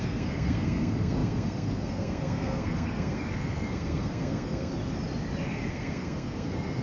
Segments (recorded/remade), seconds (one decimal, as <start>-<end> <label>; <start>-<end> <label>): 0.0-4.7 remade; 4.7-5.7 recorded; 5.7-6.8 remade